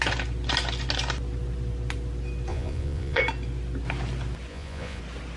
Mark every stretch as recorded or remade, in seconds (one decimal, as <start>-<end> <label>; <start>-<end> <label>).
0.0-2.5 recorded; 2.5-3.2 remade; 3.2-4.5 recorded; 4.5-5.0 remade; 5.0-5.4 recorded